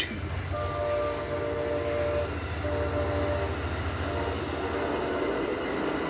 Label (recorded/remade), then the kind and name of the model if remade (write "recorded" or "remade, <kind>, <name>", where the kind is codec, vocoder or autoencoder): recorded